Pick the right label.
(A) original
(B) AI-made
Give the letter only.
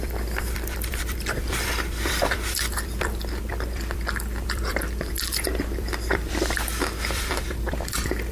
B